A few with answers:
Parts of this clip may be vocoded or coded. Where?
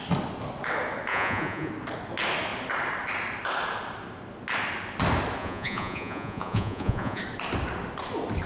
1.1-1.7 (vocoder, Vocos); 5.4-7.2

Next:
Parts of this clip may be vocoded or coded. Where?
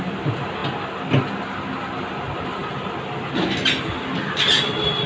none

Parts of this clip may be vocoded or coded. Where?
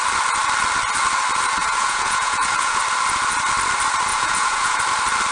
1.6-2.8 (vocoder, Vocos); 4.1-4.8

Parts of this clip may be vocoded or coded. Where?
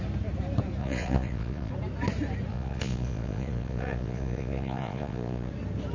0.8-1.7 (vocoder, Vocos); 2.5-5.5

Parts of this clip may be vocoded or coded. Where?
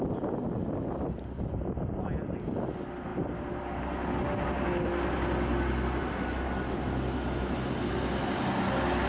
none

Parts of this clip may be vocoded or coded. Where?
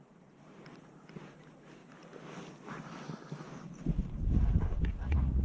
0.0-1.8 (vocoder, Vocos); 5.0-5.4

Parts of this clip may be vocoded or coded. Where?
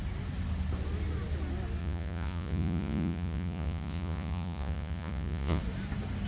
1.8-5.6 (vocoder, Vocos)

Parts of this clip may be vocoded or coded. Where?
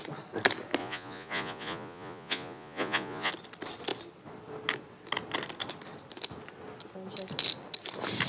0.8-3.3 (vocoder, Vocos)